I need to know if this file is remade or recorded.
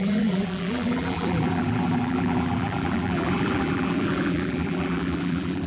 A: remade